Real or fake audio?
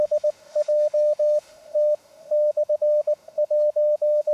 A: fake